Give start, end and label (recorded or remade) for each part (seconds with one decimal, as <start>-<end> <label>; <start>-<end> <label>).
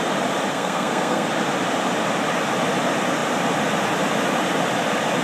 0.0-0.5 recorded; 0.5-1.3 remade; 1.3-5.2 recorded